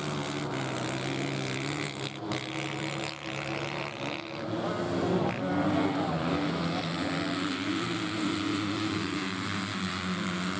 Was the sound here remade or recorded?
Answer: recorded